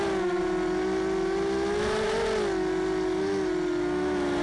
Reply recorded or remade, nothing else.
recorded